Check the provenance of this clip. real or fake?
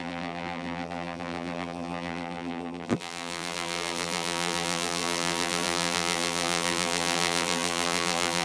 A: fake